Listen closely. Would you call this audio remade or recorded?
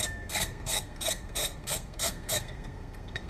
remade